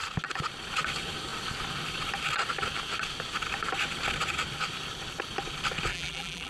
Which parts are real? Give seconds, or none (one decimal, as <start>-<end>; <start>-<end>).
0.0-5.9